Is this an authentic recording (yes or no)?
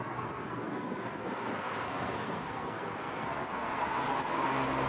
no